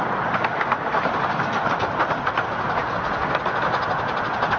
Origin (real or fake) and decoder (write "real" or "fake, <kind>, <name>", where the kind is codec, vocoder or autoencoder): real